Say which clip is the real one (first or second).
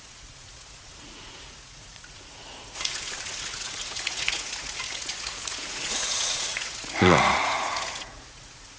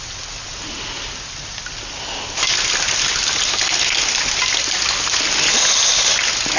second